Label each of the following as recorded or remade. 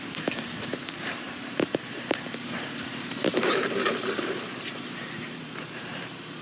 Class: remade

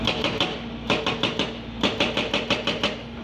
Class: recorded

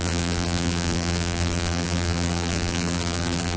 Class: remade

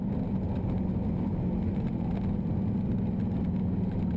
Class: recorded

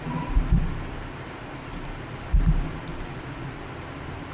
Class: remade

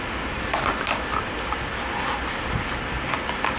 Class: recorded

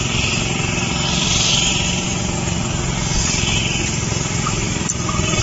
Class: remade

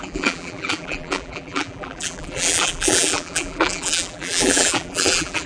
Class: remade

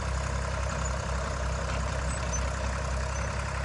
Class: recorded